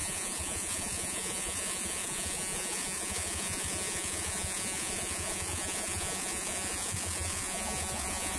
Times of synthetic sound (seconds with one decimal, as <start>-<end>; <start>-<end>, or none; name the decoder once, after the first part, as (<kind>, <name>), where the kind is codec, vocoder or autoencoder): 0.0-8.4 (vocoder, Vocos)